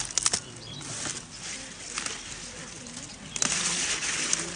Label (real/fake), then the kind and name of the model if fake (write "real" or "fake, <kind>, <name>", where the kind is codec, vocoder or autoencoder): real